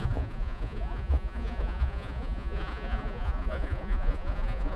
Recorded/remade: remade